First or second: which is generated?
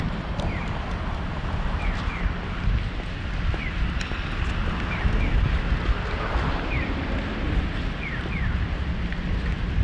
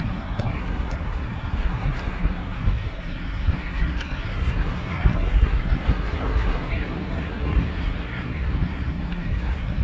second